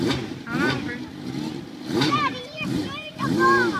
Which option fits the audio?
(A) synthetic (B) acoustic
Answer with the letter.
A